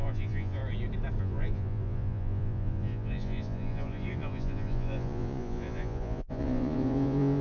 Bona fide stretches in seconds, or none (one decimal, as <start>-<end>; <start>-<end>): 0.6-1.2